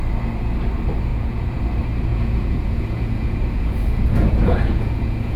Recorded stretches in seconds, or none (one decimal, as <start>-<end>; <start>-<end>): 0.0-1.1; 1.6-2.1